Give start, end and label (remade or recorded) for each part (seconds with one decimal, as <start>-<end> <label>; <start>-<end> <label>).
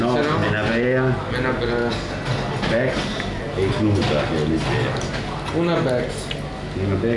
0.0-7.2 recorded